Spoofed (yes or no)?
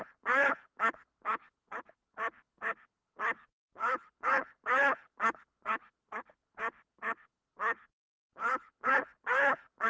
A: yes